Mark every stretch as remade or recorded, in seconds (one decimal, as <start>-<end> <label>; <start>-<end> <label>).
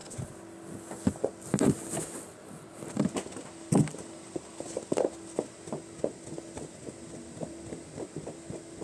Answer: 0.0-8.8 recorded